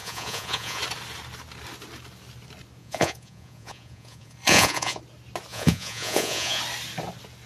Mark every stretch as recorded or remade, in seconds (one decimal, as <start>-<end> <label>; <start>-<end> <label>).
0.0-0.8 remade; 0.8-2.8 recorded; 2.8-5.0 remade; 5.0-5.5 recorded; 5.5-6.6 remade; 6.6-7.5 recorded